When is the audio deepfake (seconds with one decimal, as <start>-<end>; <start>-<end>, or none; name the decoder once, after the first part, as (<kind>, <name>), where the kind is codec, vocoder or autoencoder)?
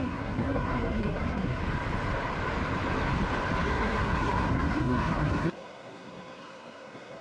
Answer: 0.0-1.6 (codec, SNAC); 3.6-7.2